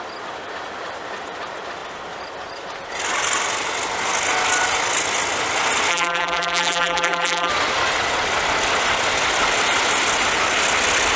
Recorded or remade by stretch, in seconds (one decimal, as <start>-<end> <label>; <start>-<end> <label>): 0.0-5.9 recorded; 5.9-7.5 remade; 7.5-11.2 recorded